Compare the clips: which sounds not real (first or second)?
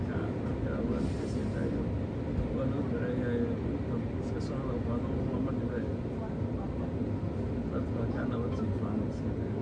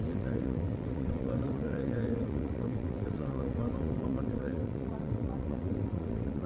second